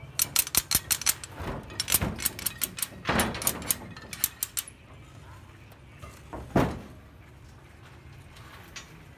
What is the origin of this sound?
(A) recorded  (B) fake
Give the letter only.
A